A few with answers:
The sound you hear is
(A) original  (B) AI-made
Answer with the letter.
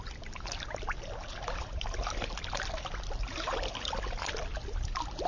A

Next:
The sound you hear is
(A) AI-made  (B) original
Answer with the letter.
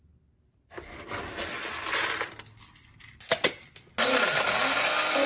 B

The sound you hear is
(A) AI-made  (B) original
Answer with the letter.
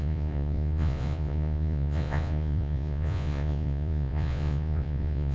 A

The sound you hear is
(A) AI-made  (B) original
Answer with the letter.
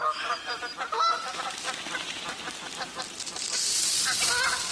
B